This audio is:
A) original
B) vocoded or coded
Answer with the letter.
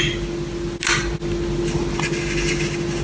A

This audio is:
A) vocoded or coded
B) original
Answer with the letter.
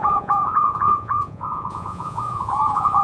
A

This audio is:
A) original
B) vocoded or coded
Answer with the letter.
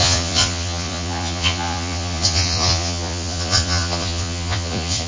B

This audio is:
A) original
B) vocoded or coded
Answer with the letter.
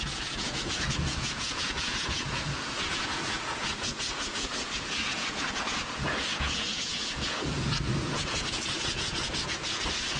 B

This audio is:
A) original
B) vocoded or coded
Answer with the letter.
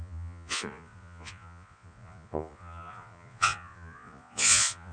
B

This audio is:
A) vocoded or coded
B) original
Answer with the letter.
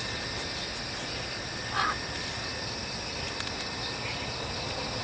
B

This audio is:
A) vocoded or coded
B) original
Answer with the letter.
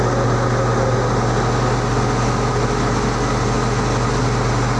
B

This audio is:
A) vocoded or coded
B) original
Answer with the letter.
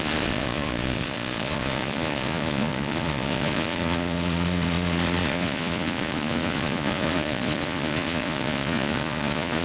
A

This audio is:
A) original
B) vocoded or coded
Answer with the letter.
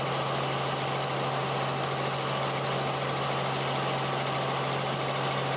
A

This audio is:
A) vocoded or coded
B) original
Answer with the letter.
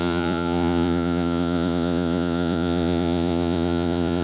A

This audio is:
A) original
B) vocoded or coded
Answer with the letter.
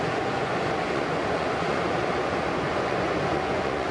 B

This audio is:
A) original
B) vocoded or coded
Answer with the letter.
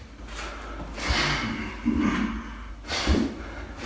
A